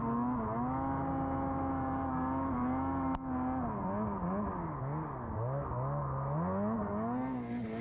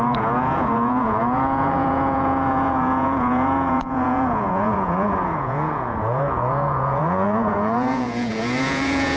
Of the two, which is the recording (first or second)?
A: first